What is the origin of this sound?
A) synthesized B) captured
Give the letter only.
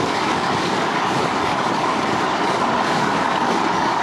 A